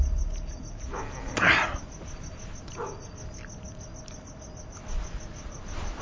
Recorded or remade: recorded